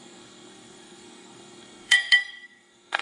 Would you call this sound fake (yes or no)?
yes